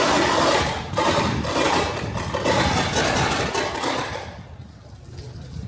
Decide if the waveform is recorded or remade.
remade